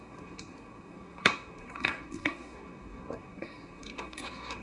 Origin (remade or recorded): remade